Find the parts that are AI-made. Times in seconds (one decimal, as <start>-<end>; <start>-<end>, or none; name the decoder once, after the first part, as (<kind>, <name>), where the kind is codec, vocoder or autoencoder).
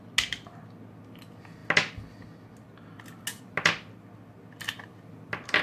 none